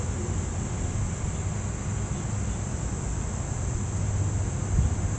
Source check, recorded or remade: recorded